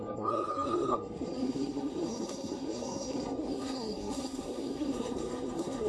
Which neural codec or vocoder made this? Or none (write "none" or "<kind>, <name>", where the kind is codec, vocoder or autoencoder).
codec, SNAC